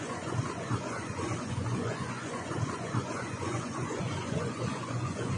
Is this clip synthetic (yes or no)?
yes